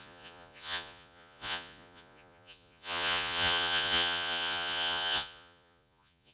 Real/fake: fake